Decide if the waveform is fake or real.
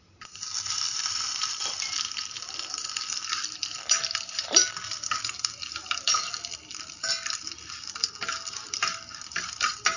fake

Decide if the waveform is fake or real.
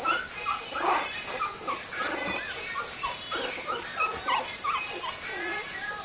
real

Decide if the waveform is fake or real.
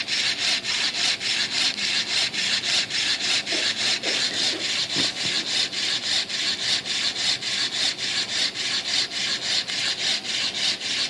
real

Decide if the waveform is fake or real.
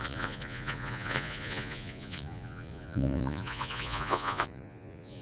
fake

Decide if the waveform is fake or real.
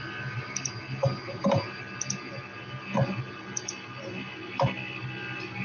fake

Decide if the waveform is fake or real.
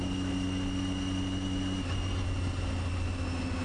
real